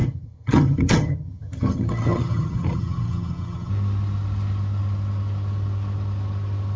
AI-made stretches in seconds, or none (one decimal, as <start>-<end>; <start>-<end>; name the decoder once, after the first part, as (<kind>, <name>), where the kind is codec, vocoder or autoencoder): 0.0-3.7 (vocoder, HiFi-GAN)